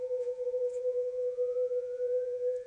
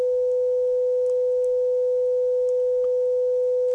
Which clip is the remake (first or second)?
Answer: first